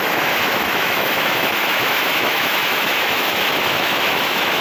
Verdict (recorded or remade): remade